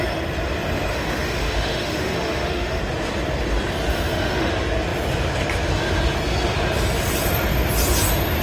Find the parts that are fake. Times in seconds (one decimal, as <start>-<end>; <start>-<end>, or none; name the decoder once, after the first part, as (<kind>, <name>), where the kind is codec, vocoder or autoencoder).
0.9-2.8 (autoencoder, DAC-VAE); 3.9-4.5